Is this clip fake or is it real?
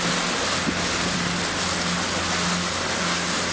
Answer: real